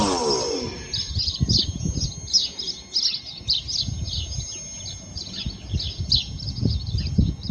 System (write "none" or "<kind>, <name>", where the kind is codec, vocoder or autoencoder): none